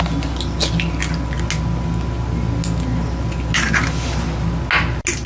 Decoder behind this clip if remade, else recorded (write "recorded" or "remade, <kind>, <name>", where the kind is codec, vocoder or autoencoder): recorded